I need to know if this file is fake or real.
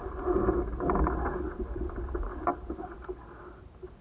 real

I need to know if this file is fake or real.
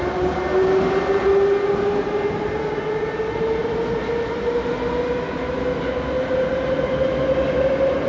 real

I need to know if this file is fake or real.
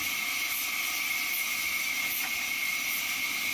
real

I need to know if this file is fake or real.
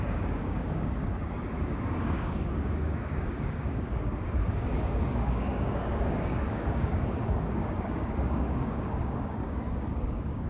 fake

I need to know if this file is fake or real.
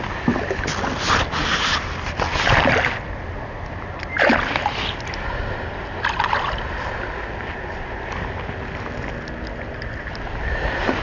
real